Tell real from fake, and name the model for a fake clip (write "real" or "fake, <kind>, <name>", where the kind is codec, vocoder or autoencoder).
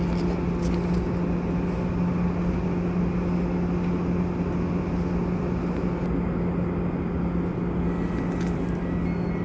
real